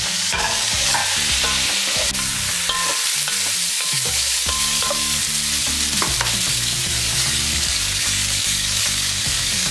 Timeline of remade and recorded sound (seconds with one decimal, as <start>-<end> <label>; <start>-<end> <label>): 0.0-1.0 remade; 1.0-3.7 recorded; 3.7-5.2 remade; 5.2-6.5 recorded; 6.5-9.7 remade